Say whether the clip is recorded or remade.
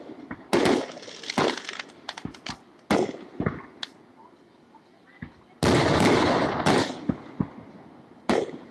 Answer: recorded